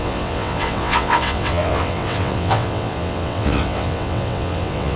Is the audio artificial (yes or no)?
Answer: yes